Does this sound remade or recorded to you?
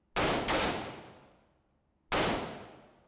recorded